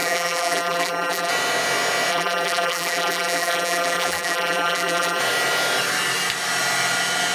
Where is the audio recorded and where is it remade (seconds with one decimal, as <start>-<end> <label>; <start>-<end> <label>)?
0.0-1.3 remade; 1.3-2.1 recorded; 2.1-5.2 remade; 5.2-7.3 recorded